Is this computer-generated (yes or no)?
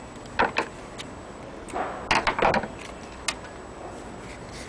no